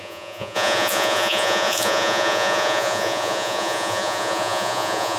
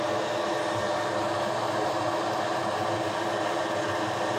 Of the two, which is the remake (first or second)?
first